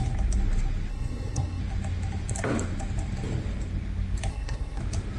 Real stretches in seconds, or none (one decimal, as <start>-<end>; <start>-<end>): 0.0-0.9; 1.6-4.3; 4.8-5.2